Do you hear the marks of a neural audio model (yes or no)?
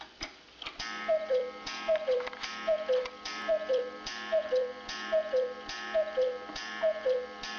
yes